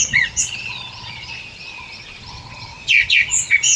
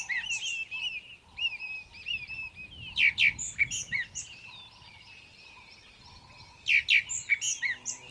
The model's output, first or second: first